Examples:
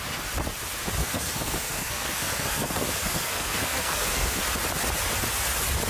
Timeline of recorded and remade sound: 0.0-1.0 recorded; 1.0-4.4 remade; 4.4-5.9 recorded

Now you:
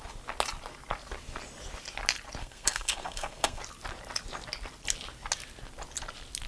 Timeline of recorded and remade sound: 0.0-2.4 recorded; 2.4-3.6 remade; 3.6-6.5 recorded

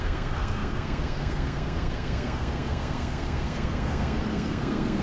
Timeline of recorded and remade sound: 0.0-5.0 remade

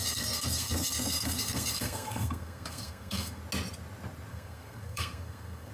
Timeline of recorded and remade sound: 0.0-3.4 remade; 3.4-4.3 recorded; 4.3-5.7 remade

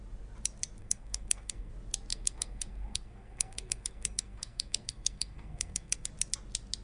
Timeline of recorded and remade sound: 0.0-0.8 recorded; 0.8-1.7 remade; 1.7-2.1 recorded; 2.1-6.1 remade; 6.1-6.8 recorded

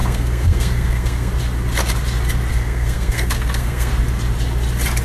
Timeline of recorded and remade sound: 0.0-1.3 remade; 1.3-2.5 recorded; 2.5-3.9 remade; 3.9-5.0 recorded

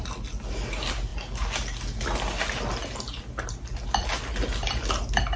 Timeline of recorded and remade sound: 0.0-5.4 recorded

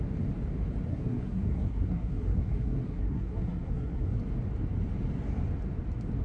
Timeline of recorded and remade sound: 0.0-0.9 recorded; 0.9-4.2 remade; 4.2-6.2 recorded